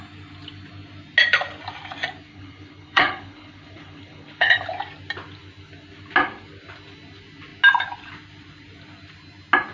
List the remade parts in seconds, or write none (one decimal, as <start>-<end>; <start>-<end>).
2.3-4.7